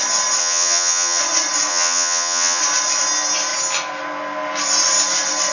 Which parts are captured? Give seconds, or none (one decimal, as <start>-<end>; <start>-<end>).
0.0-0.4; 1.2-1.7; 2.6-5.5